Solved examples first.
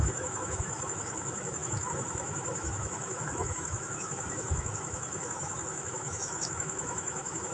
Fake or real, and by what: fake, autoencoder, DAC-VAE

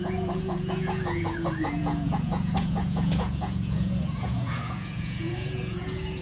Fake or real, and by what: fake, vocoder, Vocos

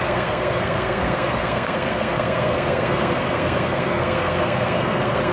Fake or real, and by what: fake, codec, SNAC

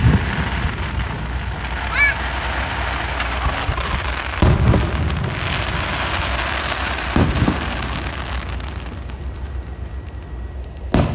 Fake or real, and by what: real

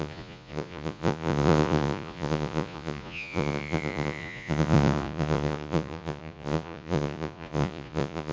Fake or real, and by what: fake, vocoder, Vocos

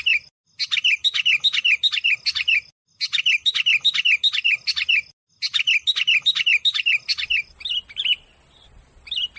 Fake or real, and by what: real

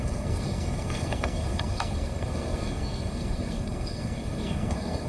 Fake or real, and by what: fake, codec, SNAC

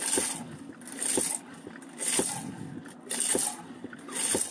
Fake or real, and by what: real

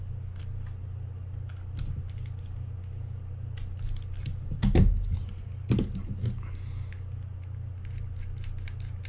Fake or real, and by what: real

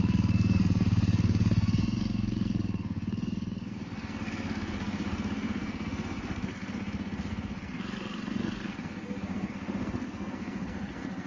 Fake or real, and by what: fake, codec, SNAC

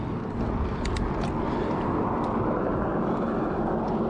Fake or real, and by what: real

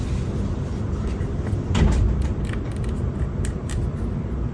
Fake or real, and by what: fake, vocoder, BigVGAN v2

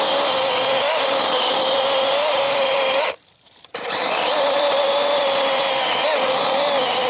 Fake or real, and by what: real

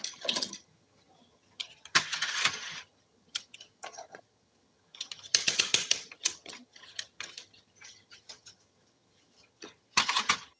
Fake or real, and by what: fake, vocoder, HiFi-GAN